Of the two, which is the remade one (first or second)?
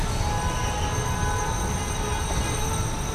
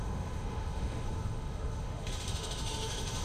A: second